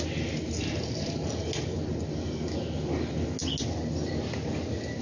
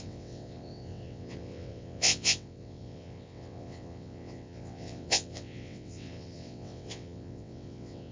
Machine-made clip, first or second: second